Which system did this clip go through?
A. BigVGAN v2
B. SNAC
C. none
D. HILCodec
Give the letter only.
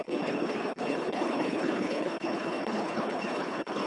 D